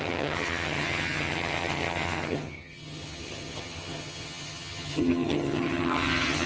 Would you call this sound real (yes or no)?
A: no